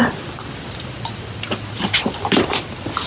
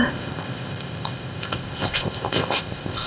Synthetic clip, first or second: second